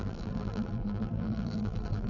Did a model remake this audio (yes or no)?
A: yes